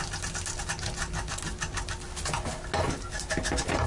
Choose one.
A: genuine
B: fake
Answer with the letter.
A